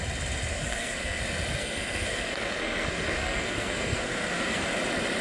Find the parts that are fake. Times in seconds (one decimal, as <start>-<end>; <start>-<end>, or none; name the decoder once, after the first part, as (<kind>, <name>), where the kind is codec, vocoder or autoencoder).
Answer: 0.5-1.2 (codec, SNAC); 1.6-4.7